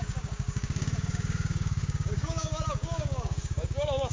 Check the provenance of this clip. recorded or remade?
remade